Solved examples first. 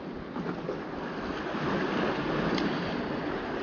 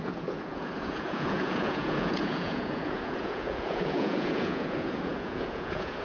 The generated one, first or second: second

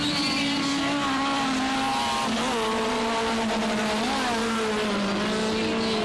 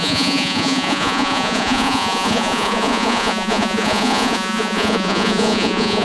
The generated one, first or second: second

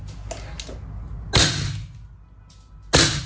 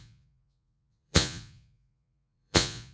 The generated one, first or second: second